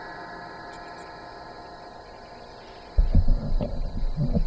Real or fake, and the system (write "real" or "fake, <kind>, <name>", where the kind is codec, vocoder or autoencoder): real